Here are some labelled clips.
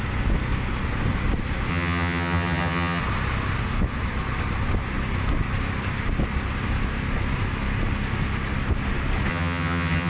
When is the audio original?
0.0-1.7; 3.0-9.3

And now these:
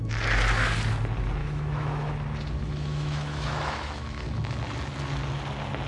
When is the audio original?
0.0-1.4; 2.1-2.6; 4.4-5.9

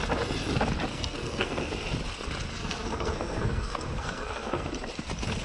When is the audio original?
0.0-0.9; 1.7-2.5; 4.7-5.4

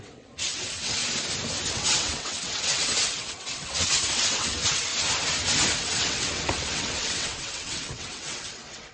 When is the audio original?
1.0-1.7; 4.9-5.8

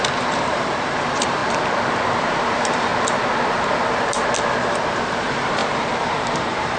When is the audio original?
1.4-2.2; 2.9-4.9

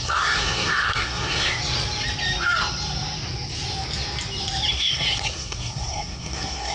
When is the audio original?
1.6-4.7